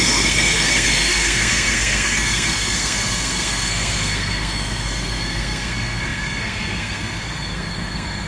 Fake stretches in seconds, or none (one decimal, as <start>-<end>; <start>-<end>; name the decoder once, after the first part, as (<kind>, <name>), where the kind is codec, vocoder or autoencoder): 0.0-8.3 (codec, SNAC)